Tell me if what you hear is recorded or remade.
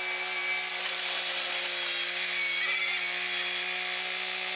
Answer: recorded